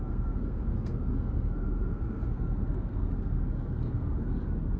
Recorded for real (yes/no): no